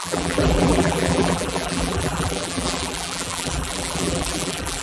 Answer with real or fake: fake